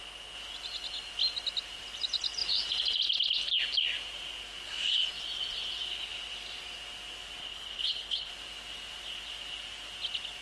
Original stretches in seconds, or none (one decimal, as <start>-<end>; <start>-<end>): 0.0-7.4; 8.3-10.4